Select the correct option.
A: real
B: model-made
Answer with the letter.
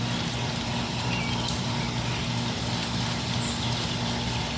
A